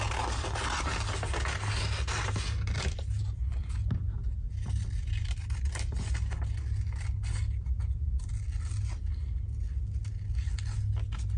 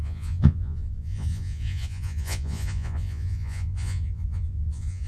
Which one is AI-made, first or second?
second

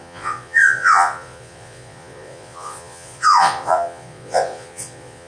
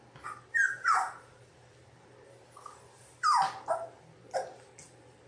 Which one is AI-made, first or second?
first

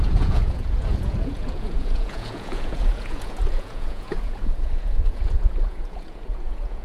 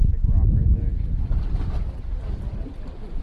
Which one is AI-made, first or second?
first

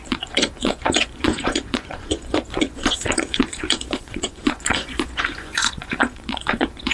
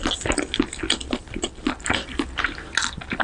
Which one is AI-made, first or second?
first